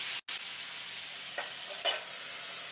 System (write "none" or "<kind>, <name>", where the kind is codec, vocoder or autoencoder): none